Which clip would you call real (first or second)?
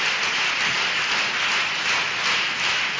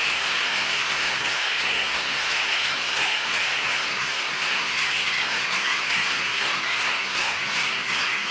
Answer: first